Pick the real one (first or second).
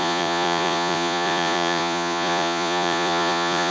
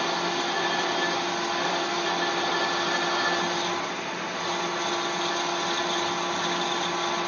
second